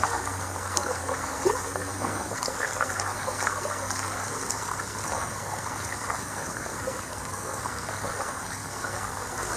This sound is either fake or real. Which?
fake